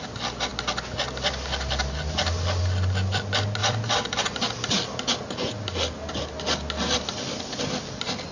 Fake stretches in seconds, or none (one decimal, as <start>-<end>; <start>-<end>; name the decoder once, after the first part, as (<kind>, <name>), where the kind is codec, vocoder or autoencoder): 3.6-4.2 (vocoder, BigVGAN v2)